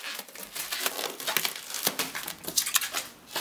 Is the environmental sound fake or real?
real